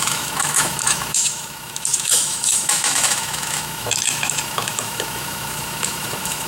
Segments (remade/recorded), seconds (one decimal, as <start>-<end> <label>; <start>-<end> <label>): 0.0-6.5 remade